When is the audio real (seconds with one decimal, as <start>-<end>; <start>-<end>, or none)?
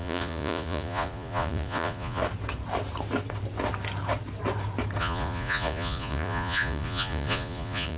2.2-5.0